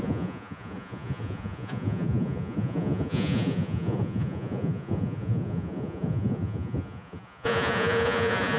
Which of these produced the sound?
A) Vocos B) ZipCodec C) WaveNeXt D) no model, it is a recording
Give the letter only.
A